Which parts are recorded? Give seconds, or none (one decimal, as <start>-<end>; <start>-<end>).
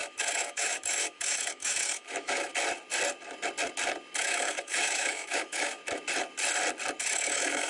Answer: 2.5-4.2; 5.8-7.0